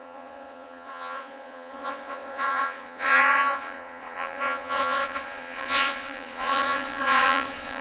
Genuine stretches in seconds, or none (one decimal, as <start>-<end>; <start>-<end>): none